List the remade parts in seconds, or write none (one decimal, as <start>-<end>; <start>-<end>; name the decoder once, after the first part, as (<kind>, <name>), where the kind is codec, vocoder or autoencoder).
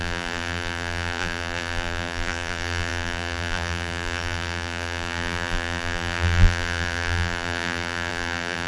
0.0-8.7 (vocoder, BigVGAN v2)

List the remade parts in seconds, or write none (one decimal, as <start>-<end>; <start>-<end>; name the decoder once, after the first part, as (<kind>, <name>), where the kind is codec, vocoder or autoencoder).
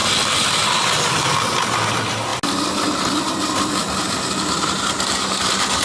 none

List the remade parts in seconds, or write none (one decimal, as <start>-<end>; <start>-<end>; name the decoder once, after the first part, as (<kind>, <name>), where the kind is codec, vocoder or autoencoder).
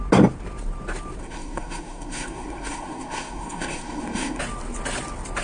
1.2-4.4 (codec, SNAC)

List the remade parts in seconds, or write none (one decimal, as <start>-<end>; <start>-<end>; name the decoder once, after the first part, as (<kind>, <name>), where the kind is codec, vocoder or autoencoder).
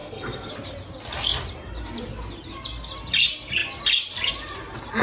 0.0-0.5 (codec, SNAC)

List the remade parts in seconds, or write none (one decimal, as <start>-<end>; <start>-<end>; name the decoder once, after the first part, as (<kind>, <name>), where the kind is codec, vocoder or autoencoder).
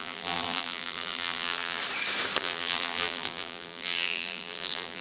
0.0-1.8 (vocoder, BigVGAN v2); 2.4-5.0